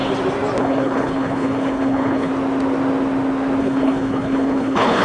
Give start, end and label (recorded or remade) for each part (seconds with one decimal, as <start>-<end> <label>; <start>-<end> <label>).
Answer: 0.0-0.6 recorded; 0.6-2.3 remade; 2.3-3.6 recorded; 3.6-5.0 remade